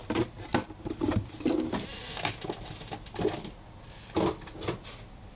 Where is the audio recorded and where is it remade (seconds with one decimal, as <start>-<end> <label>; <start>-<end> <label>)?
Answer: 0.0-5.4 recorded